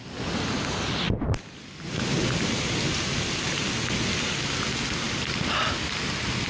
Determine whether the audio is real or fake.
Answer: real